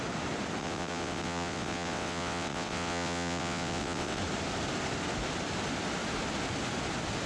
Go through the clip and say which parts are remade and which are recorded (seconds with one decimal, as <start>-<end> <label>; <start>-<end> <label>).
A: 0.0-0.6 recorded; 0.6-4.2 remade; 4.2-7.3 recorded